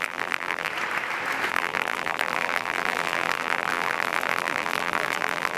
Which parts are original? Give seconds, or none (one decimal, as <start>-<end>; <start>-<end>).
0.7-1.5